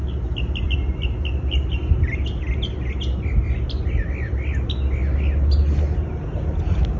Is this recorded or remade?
recorded